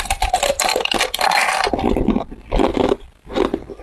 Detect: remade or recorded recorded